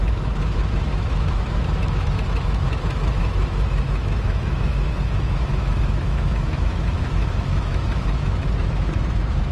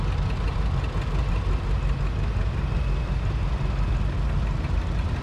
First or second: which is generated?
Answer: first